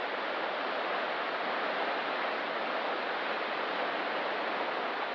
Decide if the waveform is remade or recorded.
recorded